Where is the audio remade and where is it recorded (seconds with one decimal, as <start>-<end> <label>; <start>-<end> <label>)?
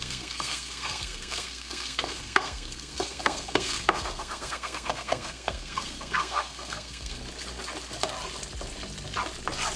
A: 0.0-7.2 remade; 7.2-9.8 recorded